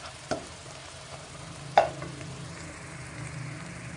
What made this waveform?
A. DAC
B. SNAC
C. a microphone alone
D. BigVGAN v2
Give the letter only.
D